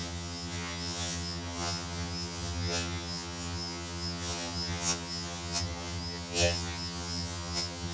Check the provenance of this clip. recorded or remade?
remade